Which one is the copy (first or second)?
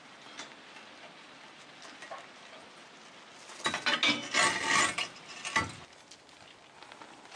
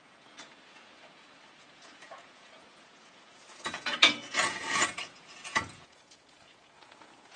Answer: second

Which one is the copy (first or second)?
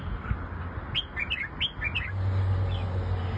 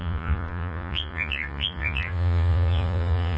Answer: second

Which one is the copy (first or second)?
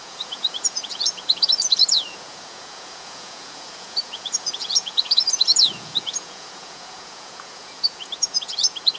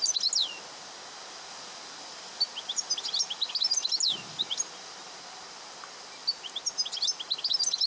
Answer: first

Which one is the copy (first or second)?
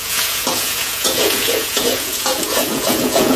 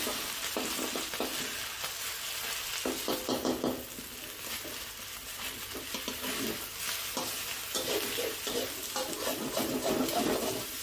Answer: first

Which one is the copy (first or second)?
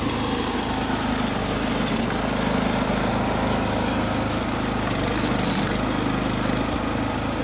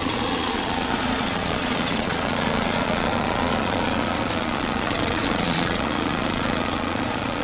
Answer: second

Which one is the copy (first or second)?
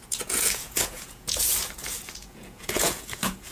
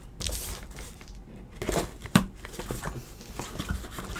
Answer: first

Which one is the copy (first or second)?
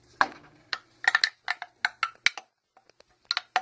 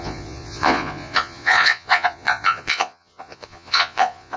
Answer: second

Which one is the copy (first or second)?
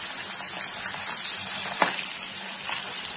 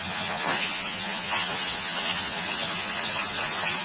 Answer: second